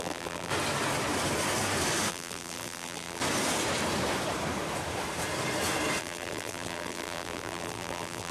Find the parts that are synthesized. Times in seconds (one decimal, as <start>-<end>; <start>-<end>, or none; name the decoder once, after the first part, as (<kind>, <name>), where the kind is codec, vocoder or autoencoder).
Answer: 0.0-0.5 (vocoder, BigVGAN v2); 2.1-3.2; 6.0-8.3